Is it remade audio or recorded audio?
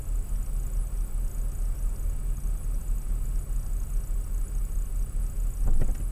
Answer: recorded